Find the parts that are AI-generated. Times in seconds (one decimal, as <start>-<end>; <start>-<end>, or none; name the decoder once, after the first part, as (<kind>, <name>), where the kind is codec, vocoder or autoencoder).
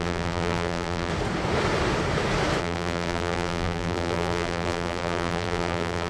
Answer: 0.0-1.1 (vocoder, BigVGAN v2); 2.6-6.1